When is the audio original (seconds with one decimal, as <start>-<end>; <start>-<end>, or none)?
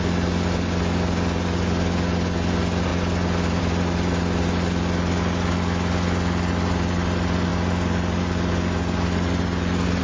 0.0-10.0